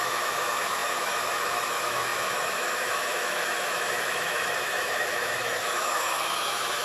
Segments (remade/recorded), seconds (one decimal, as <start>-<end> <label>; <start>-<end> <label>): 0.0-6.8 remade